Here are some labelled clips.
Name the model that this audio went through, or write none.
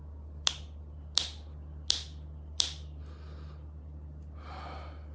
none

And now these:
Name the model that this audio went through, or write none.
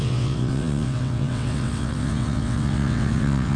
vocoder, WaveNeXt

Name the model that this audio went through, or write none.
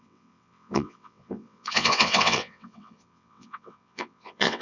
vocoder, WaveNeXt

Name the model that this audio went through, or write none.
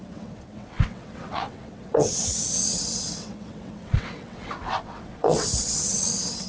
vocoder, WaveNeXt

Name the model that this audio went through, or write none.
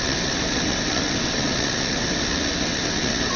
vocoder, WaveNeXt